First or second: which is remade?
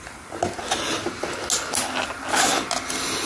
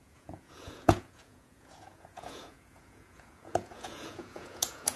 second